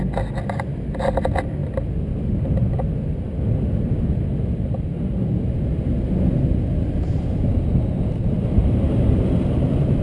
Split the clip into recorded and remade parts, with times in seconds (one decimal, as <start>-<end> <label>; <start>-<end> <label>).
0.0-8.6 recorded; 8.6-9.1 remade; 9.1-10.0 recorded